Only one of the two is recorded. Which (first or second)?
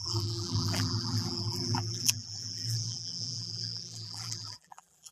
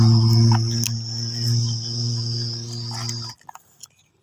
second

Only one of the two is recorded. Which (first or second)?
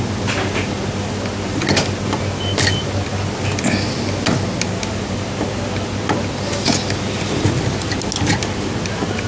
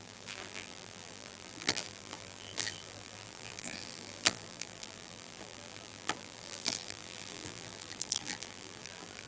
first